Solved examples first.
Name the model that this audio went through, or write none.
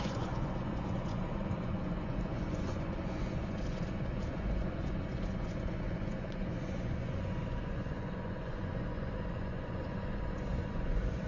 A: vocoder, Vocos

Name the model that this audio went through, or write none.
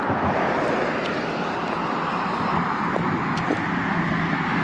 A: none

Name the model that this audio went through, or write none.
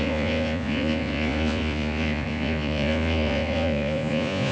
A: vocoder, Vocos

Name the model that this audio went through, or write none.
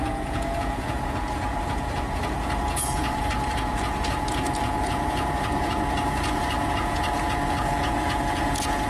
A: vocoder, Vocos